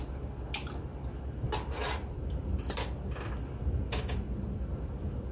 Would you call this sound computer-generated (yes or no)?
no